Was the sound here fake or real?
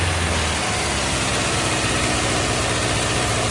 real